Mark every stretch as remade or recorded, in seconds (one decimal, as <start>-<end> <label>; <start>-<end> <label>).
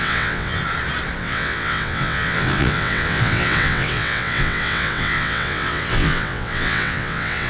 0.0-0.6 remade; 0.6-1.2 recorded; 1.2-7.5 remade